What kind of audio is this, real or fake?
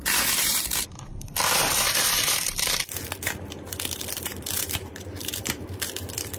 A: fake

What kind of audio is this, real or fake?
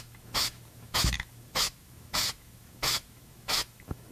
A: fake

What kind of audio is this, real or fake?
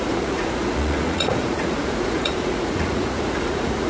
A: fake